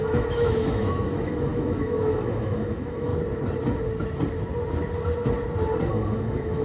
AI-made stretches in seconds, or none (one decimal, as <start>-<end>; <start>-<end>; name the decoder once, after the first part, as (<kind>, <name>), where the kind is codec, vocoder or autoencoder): 0.0-3.1 (autoencoder, DAC-VAE); 5.9-6.6